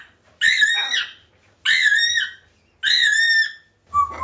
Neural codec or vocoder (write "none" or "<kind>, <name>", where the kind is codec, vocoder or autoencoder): none